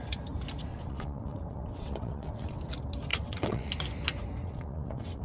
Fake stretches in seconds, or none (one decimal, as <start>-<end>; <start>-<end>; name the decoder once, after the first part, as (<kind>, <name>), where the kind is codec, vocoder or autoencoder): 0.7-2.6 (vocoder, WaveNeXt); 3.1-3.7; 4.4-5.2